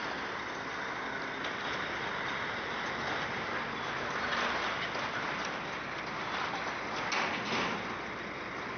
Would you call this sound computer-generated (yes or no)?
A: no